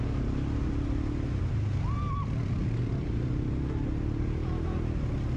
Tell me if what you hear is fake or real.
real